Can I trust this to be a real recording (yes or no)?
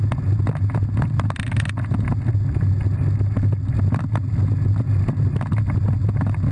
yes